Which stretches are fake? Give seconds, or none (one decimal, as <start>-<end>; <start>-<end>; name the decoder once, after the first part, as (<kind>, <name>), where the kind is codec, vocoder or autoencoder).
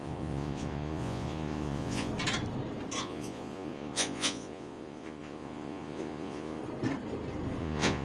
0.0-2.1 (vocoder, Vocos); 3.0-6.6; 7.6-8.0